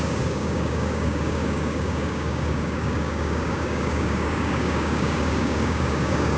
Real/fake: fake